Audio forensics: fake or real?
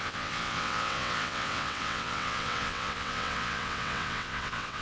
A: fake